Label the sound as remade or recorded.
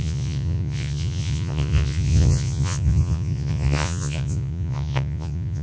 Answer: remade